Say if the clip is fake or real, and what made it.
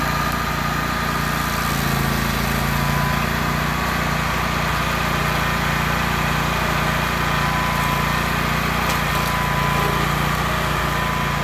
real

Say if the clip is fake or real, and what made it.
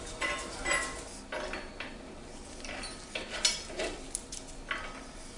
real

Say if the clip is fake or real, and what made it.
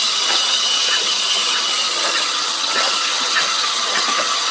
fake, vocoder, HiFi-GAN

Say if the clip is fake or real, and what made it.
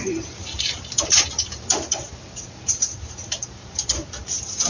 fake, vocoder, BigVGAN v2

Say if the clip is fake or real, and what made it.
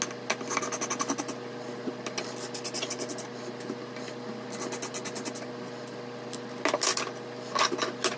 real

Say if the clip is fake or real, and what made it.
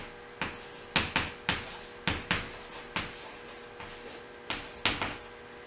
real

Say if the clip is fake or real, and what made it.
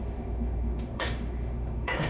fake, autoencoder, DAC-VAE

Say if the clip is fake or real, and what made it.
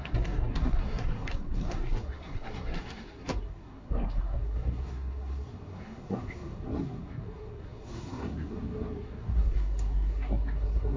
fake, codec, SNAC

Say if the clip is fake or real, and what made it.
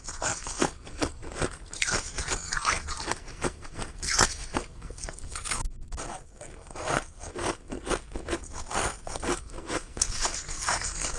fake, codec, SNAC